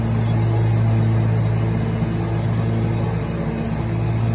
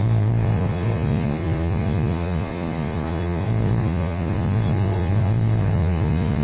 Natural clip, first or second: first